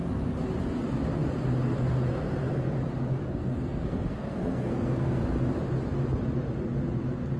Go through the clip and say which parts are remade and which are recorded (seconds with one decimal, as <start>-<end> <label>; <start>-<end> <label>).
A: 0.0-3.2 recorded; 3.2-5.2 remade; 5.2-7.4 recorded